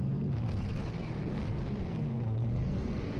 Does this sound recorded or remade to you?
remade